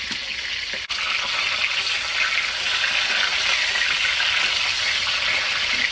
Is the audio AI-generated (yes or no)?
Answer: no